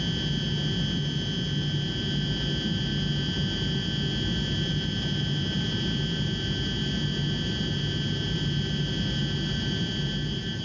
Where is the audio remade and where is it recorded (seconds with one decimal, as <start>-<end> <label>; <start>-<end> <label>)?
0.0-10.6 recorded